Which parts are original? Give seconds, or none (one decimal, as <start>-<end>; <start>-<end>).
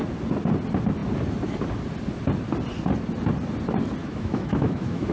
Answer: 0.0-4.0